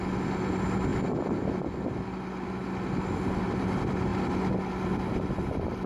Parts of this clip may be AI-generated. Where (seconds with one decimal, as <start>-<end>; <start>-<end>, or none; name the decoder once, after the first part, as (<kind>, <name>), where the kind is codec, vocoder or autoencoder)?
none

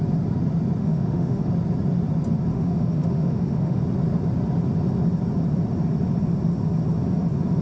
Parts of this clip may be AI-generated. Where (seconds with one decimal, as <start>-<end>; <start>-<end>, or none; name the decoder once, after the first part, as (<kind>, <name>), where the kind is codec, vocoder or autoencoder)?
0.8-1.5 (autoencoder, DAC-VAE); 2.5-3.8

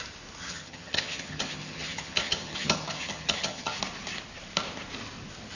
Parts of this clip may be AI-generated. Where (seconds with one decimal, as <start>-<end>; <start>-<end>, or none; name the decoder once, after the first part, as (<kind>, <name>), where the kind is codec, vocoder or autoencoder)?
0.4-3.8 (vocoder, HiFi-GAN)

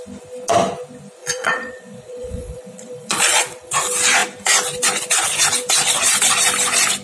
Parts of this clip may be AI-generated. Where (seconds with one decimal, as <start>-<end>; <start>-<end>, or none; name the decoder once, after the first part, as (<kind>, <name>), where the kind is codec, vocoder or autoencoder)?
1.2-3.8 (vocoder, Vocos)

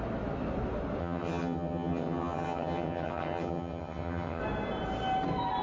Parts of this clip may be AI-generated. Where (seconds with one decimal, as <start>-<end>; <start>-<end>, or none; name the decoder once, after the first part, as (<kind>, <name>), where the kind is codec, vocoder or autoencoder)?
1.0-4.4 (vocoder, HiFi-GAN)

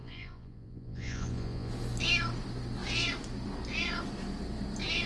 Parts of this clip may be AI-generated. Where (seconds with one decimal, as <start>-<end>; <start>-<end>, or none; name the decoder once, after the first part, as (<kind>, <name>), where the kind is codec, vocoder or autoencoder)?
0.0-1.7 (vocoder, Vocos)

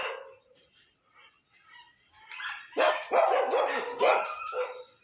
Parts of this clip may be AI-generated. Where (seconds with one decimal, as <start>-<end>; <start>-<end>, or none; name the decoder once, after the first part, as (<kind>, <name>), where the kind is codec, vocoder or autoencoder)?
none